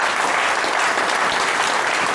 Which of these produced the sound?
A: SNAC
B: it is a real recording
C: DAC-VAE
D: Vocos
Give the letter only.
B